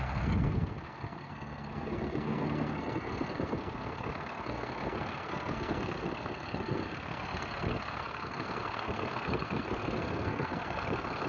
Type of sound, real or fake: fake